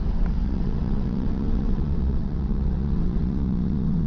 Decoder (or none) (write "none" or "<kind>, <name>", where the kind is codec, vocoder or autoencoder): vocoder, WaveNeXt